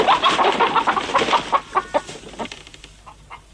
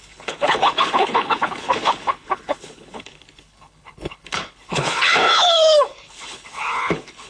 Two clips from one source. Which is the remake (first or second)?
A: second